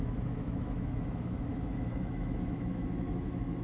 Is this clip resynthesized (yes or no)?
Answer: yes